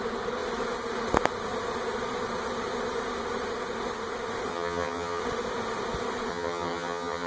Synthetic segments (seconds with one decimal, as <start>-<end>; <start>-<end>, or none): 4.5-5.2; 6.3-7.3